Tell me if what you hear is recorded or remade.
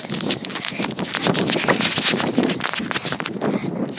recorded